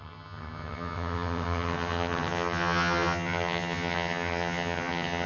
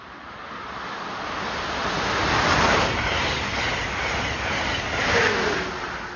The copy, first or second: first